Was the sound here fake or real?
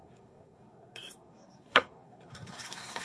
fake